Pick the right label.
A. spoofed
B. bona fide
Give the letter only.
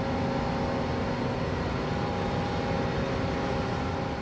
B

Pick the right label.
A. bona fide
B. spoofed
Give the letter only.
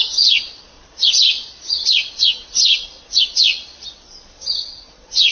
B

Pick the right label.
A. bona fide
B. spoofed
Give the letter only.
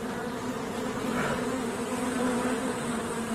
A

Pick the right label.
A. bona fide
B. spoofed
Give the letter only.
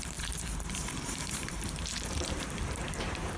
B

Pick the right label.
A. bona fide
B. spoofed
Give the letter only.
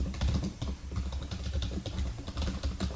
A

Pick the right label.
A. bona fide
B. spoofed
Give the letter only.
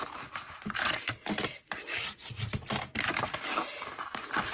A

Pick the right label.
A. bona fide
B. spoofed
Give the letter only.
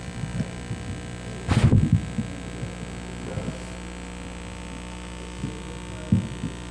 A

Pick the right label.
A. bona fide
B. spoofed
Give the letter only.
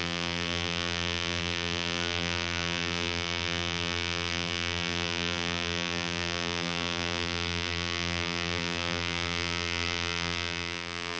B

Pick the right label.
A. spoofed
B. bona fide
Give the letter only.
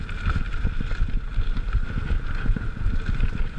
B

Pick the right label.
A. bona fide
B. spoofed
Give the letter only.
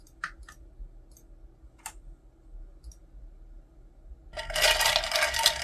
A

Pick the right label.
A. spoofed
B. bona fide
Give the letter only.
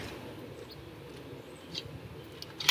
B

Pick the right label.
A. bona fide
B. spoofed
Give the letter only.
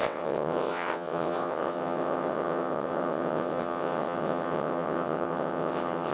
B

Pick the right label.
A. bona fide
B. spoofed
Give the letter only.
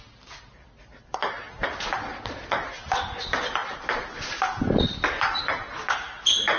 A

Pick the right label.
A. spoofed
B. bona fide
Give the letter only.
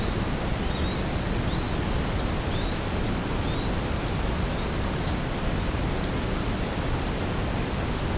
B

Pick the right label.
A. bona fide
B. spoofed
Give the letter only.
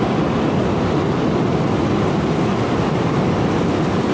A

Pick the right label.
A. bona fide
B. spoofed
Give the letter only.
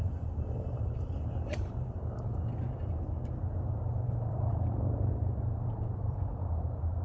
B